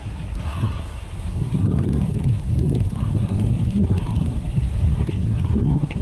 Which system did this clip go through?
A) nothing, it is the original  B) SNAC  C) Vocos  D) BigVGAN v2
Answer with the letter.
B